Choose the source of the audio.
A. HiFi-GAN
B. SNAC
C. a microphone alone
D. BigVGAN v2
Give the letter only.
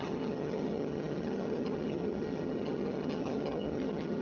A